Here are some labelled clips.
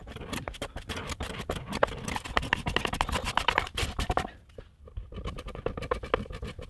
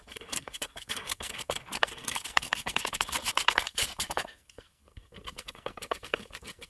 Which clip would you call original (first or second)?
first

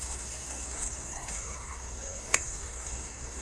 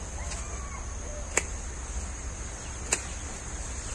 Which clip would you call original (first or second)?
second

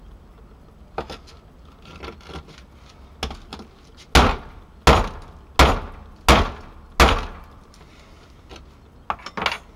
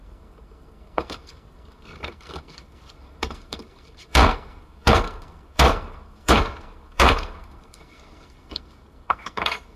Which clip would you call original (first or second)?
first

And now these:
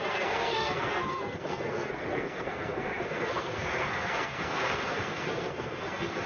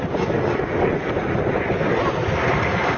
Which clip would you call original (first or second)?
second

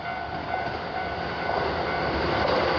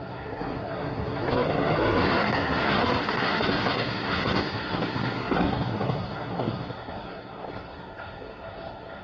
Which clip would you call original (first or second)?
first